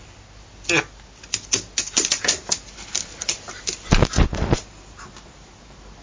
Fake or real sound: real